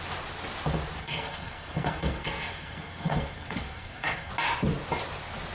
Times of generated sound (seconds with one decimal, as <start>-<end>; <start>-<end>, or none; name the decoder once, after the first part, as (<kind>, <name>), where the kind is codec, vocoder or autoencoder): 1.0-4.3 (codec, SNAC)